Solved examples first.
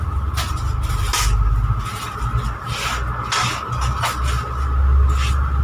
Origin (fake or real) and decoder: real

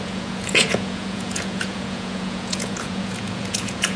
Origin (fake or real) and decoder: fake, vocoder, Vocos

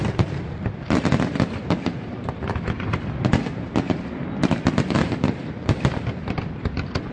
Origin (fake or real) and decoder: real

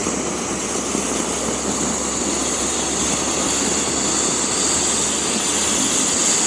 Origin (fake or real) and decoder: real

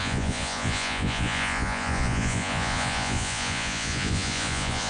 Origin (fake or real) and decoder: fake, vocoder, Vocos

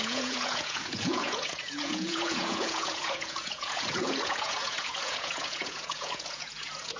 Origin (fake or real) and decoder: fake, vocoder, Vocos